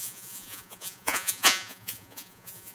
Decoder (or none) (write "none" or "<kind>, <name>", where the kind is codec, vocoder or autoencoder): vocoder, Vocos